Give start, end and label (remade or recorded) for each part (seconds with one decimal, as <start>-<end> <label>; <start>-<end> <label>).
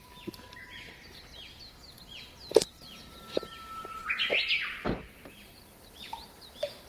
0.0-0.6 remade; 0.6-3.0 recorded; 3.0-4.0 remade; 4.0-5.3 recorded; 5.3-6.9 remade